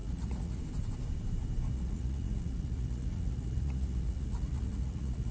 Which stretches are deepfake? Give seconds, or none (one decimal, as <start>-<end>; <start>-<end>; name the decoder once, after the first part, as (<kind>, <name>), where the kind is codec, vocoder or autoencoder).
0.0-0.6 (vocoder, Vocos); 1.7-5.3